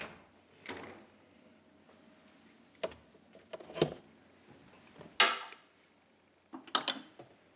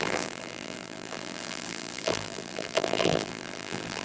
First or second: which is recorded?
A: first